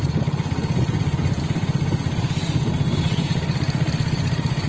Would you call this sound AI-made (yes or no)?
no